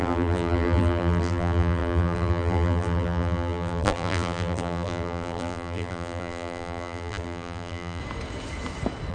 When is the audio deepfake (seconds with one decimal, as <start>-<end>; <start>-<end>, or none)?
0.0-8.0